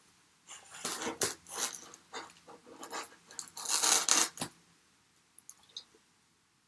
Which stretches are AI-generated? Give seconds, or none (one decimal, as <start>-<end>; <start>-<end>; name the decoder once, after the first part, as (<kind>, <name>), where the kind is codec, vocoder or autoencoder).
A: none